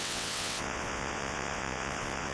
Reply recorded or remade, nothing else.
remade